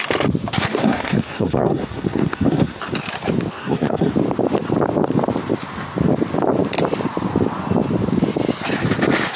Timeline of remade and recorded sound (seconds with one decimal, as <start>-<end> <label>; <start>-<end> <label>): 0.0-0.8 recorded; 0.8-2.8 remade; 2.8-3.6 recorded; 3.6-4.1 remade; 4.1-9.4 recorded

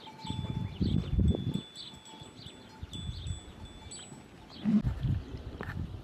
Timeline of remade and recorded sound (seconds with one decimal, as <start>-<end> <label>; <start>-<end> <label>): 0.0-6.0 recorded

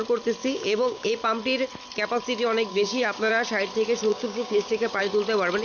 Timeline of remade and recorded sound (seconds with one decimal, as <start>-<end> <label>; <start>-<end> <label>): 0.0-0.4 recorded; 0.4-1.1 remade; 1.1-2.7 recorded; 2.7-3.3 remade; 3.3-4.1 recorded; 4.1-5.0 remade; 5.0-5.6 recorded

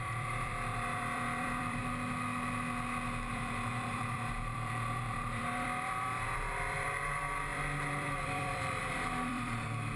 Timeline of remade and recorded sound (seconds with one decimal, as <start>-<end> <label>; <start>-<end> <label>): 0.0-1.8 remade; 1.8-3.3 recorded; 3.3-10.0 remade

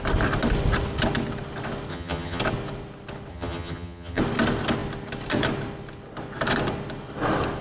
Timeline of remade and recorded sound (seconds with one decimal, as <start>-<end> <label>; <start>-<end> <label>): 0.0-1.9 recorded; 1.9-2.4 remade; 2.4-3.3 recorded; 3.3-4.2 remade; 4.2-7.6 recorded